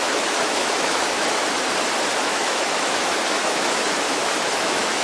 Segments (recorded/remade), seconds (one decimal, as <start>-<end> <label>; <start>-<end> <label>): 0.0-1.4 remade; 1.4-2.2 recorded; 2.2-5.0 remade